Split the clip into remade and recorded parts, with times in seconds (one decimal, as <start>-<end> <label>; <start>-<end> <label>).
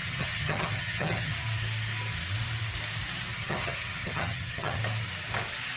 0.0-1.3 remade; 1.3-3.3 recorded; 3.3-4.8 remade; 4.8-5.8 recorded